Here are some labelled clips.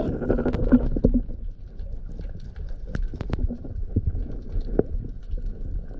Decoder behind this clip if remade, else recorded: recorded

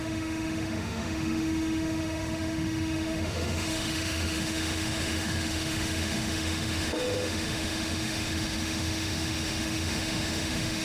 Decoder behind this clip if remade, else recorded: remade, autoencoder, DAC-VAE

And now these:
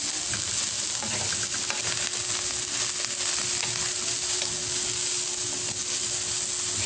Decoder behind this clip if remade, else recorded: recorded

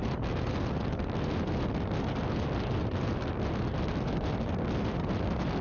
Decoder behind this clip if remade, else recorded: recorded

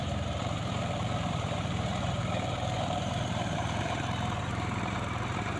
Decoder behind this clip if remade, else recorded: remade, vocoder, BigVGAN v2